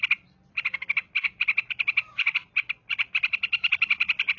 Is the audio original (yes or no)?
yes